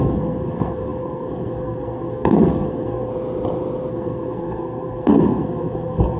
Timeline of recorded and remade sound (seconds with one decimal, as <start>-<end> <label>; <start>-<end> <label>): 0.0-3.1 remade; 3.1-3.9 recorded; 3.9-6.2 remade

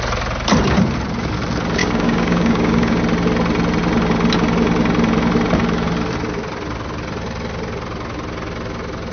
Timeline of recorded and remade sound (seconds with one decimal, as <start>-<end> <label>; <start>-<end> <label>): 0.0-1.8 recorded; 1.8-3.0 remade; 3.0-9.1 recorded

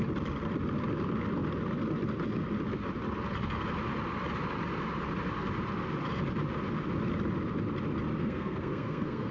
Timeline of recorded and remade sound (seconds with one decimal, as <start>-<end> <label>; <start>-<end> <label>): 0.0-8.2 recorded; 8.2-9.3 remade

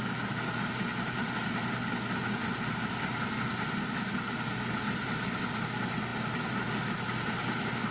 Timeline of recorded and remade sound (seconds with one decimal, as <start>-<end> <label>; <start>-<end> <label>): 0.0-7.9 recorded

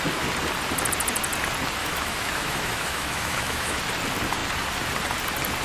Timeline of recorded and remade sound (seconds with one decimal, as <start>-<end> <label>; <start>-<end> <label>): 0.0-1.8 recorded; 1.8-3.8 remade; 3.8-5.6 recorded

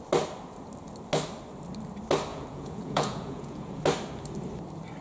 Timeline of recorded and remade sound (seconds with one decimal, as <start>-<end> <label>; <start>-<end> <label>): 0.0-2.3 recorded; 2.3-3.8 remade; 3.8-5.0 recorded